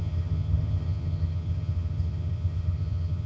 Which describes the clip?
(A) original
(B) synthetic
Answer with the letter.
B